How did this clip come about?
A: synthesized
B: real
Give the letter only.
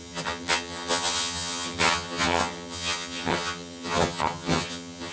A